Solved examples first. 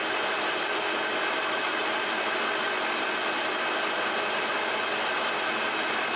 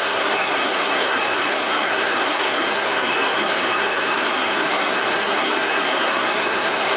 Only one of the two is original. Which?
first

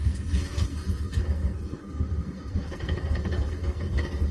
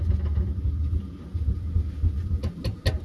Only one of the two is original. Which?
second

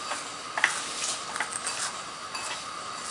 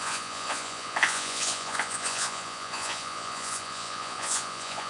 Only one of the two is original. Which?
first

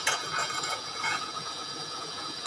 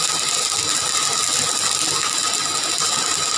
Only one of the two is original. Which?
second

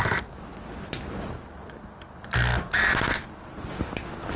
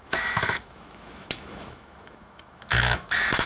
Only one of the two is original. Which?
first